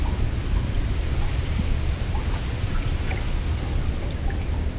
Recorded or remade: recorded